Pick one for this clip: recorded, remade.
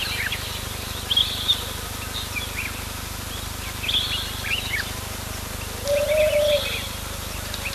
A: recorded